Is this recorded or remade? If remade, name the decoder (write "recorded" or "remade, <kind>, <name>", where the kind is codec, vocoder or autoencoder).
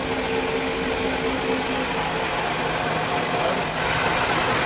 recorded